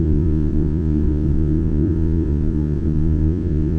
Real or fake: fake